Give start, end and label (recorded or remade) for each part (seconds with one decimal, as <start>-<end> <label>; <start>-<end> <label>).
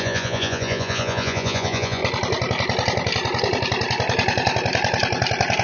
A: 0.0-2.0 remade; 2.0-5.6 recorded